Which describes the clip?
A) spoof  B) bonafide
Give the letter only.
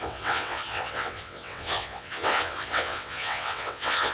A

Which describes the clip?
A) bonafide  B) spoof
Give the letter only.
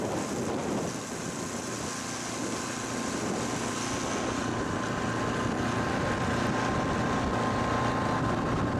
A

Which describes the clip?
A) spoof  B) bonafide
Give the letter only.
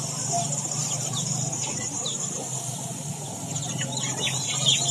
B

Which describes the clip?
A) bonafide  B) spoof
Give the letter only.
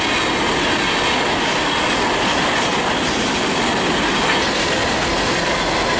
A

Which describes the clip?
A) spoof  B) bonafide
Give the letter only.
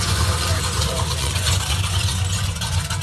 A